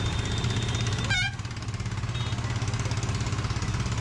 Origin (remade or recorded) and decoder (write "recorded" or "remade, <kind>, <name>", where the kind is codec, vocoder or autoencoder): recorded